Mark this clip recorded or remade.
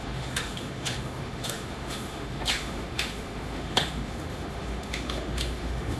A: remade